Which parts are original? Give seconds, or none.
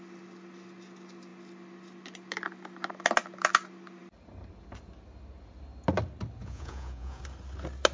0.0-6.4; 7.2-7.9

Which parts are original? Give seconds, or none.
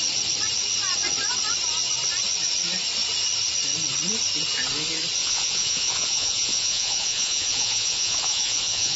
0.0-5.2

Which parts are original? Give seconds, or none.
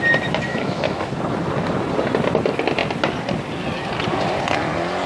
0.0-0.5; 1.1-5.1